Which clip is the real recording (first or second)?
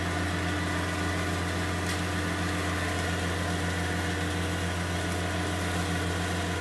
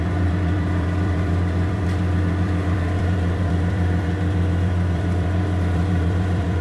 first